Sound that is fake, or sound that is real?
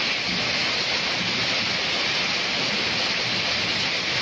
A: real